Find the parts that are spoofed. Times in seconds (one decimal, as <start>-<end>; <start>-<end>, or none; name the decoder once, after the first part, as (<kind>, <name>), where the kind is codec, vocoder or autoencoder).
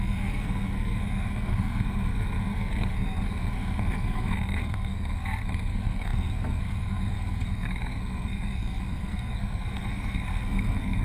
0.0-11.0 (codec, SNAC)